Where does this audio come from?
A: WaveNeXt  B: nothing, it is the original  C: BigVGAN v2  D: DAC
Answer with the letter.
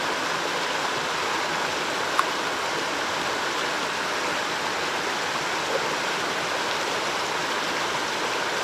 B